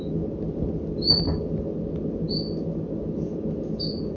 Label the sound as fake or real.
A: real